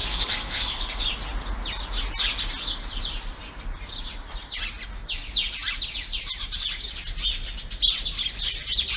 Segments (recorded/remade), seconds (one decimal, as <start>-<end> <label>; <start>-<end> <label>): 0.0-1.0 remade; 1.0-9.0 recorded